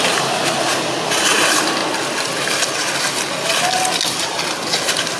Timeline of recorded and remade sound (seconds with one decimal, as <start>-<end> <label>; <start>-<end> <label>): 0.0-1.8 remade; 1.8-5.2 recorded